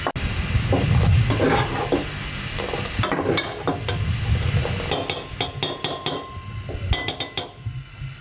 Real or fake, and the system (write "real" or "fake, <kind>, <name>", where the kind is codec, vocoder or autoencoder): real